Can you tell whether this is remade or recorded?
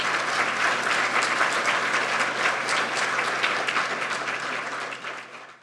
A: recorded